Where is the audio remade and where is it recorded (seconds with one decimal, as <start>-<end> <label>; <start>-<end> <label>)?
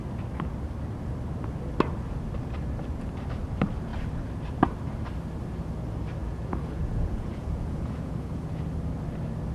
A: 0.0-6.2 recorded; 6.2-8.5 remade; 8.5-9.5 recorded